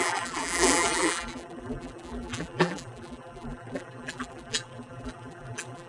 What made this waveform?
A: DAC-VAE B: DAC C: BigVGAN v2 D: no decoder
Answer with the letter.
C